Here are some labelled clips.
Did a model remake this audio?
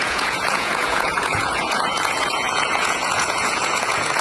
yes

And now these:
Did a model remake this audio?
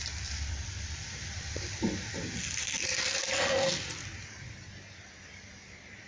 yes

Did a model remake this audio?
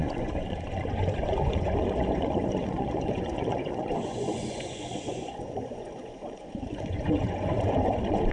yes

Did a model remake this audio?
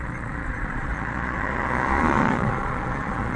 yes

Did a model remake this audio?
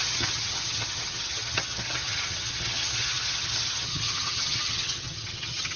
yes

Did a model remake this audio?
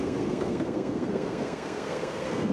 yes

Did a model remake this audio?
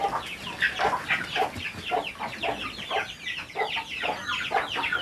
no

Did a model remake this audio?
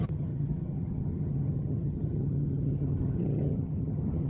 yes